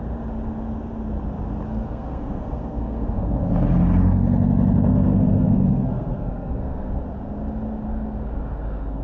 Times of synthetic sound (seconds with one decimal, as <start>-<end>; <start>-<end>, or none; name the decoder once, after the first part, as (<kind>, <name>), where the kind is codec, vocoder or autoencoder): 1.7-3.2 (codec, SNAC); 4.9-6.9